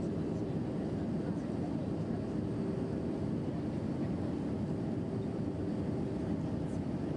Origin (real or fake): real